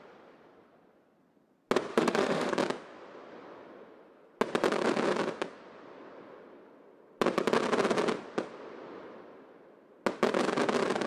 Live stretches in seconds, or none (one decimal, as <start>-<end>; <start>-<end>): 0.0-1.9; 2.5-11.1